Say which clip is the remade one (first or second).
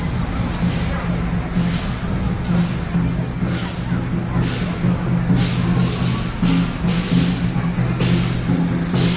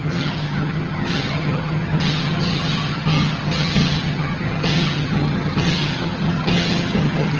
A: second